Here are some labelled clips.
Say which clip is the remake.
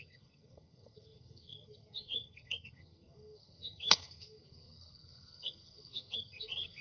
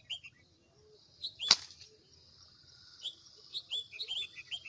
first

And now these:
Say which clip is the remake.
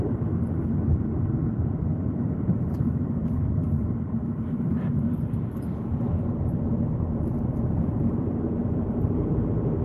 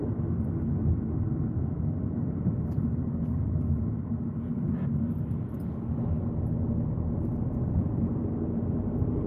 first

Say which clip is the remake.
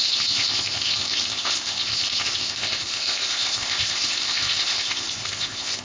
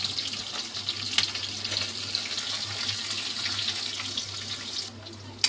first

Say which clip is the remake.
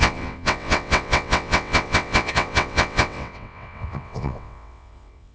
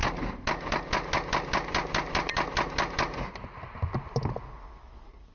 first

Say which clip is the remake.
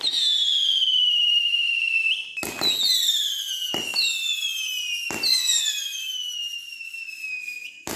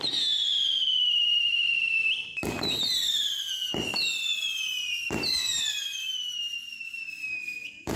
second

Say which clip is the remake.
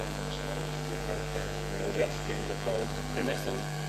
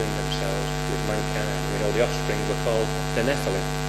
first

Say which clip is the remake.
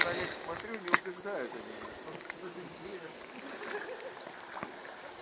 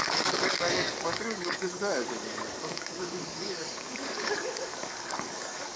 second